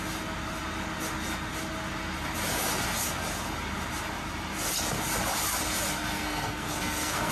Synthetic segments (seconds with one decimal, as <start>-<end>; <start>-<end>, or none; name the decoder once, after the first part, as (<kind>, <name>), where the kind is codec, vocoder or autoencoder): 6.1-7.3 (codec, SNAC)